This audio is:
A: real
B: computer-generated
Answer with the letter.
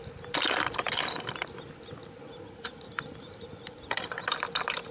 A